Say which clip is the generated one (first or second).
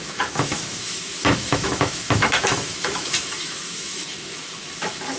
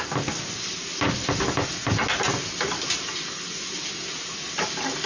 first